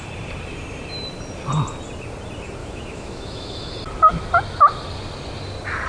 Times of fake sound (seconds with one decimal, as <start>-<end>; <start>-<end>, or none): 2.6-3.7